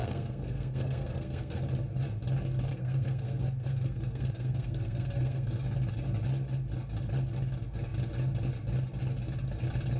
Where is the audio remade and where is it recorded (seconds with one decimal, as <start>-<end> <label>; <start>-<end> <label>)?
0.0-1.6 remade; 1.6-2.7 recorded; 2.7-5.5 remade; 5.5-10.0 recorded